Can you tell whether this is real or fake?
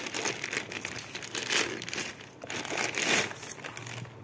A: real